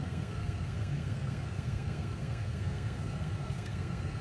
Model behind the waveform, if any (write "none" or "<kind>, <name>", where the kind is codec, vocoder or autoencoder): codec, SNAC